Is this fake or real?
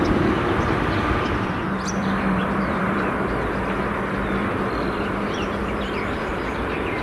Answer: fake